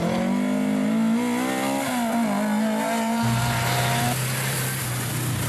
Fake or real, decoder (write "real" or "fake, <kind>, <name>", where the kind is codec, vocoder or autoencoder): real